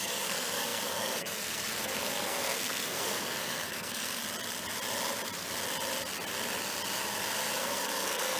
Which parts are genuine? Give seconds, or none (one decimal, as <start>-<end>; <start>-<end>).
4.2-7.6